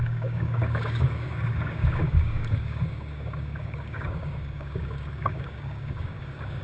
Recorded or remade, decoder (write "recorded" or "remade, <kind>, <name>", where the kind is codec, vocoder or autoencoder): remade, codec, DAC